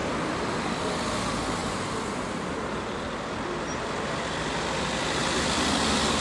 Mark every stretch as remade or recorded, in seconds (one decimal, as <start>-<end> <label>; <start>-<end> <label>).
0.0-0.5 remade; 0.5-1.6 recorded; 1.6-2.6 remade; 2.6-5.2 recorded; 5.2-6.2 remade